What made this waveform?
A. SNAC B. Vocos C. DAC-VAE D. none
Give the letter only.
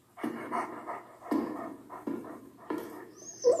D